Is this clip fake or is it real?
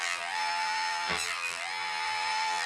fake